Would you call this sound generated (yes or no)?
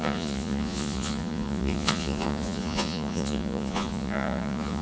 yes